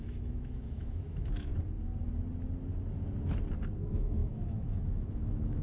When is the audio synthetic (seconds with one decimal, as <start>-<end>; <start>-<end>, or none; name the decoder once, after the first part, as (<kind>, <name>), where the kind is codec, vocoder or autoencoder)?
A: 0.0-1.5 (autoencoder, DAC-VAE); 3.8-5.6